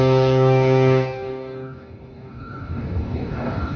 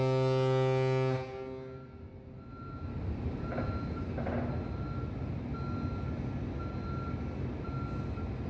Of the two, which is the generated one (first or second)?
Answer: first